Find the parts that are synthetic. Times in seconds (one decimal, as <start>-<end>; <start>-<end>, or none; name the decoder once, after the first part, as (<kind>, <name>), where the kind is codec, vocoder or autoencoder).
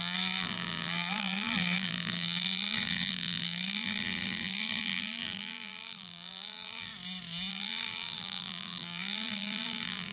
0.0-6.9 (vocoder, BigVGAN v2); 7.5-10.1